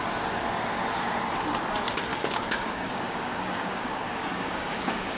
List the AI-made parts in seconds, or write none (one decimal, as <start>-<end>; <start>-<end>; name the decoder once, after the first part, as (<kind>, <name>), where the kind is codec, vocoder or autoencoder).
2.1-5.2 (codec, DAC)